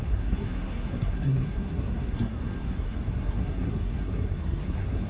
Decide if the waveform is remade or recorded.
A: remade